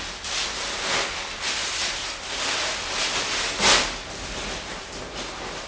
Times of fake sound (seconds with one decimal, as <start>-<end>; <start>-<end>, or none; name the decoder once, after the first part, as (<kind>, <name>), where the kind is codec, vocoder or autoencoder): none